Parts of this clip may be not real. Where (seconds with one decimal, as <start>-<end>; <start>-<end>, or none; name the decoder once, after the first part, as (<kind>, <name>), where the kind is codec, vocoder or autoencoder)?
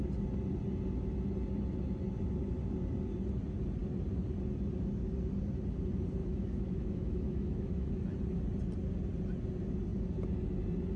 6.2-7.9 (autoencoder, DAC-VAE)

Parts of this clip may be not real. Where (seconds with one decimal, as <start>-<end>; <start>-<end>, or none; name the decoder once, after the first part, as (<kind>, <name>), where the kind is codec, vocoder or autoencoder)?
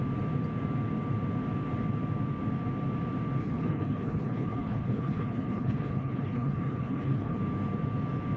3.4-7.4 (codec, HILCodec)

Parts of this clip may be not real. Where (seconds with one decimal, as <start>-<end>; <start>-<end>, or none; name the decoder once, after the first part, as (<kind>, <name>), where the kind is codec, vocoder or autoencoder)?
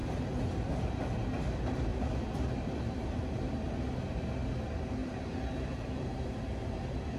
1.9-3.2 (vocoder, BigVGAN v2); 5.0-6.1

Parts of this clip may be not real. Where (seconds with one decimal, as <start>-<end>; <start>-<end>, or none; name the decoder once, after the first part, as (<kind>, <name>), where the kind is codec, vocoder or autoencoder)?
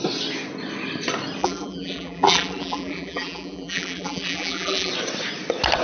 1.4-4.9 (vocoder, BigVGAN v2)